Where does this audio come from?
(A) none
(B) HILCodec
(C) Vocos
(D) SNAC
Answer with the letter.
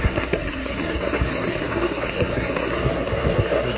D